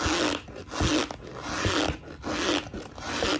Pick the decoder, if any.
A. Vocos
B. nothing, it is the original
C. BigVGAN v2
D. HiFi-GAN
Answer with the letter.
B